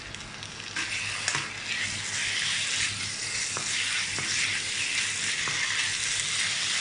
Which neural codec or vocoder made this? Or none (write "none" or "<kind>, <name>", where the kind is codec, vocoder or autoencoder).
none